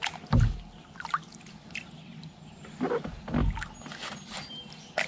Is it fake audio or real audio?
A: real